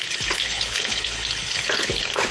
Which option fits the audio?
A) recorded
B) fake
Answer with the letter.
B